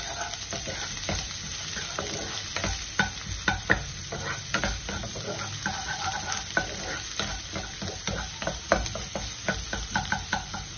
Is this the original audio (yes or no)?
yes